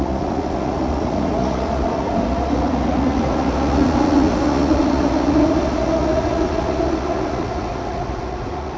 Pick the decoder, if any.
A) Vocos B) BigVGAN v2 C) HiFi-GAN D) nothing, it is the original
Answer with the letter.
A